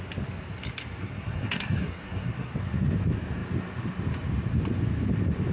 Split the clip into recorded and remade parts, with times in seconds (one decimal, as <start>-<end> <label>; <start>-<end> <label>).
0.0-1.0 recorded; 1.0-2.5 remade; 2.5-5.5 recorded